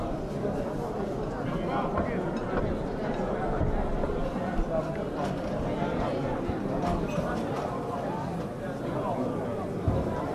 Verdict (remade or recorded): recorded